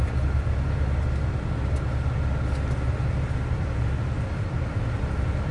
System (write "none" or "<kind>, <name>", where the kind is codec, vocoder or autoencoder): none